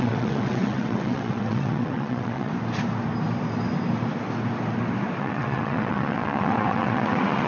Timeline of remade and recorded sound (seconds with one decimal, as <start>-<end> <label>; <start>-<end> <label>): 0.0-2.5 remade; 2.5-5.2 recorded; 5.2-7.5 remade

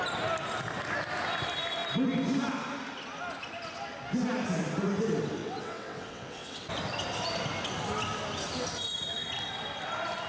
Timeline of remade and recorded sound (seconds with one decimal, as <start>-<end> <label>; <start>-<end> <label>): 0.0-5.4 recorded; 5.4-6.6 remade; 6.6-10.3 recorded

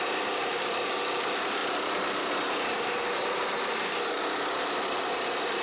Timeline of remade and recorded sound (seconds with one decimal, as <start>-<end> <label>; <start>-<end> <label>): 0.0-5.6 recorded

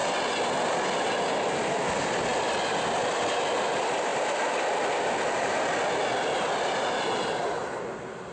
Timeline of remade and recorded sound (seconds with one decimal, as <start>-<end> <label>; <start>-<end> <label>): 0.0-8.3 recorded

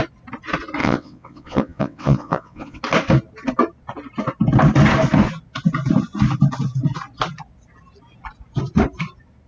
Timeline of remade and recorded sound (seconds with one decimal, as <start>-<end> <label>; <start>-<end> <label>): 0.0-0.8 recorded; 0.8-2.8 remade; 2.8-9.5 recorded

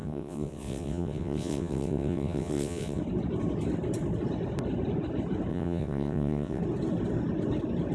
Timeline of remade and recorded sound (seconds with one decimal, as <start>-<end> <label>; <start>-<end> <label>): 0.0-3.0 remade; 3.0-5.5 recorded; 5.5-6.6 remade; 6.6-7.9 recorded